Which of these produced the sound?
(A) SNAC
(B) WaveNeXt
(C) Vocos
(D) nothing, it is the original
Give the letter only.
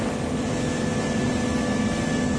D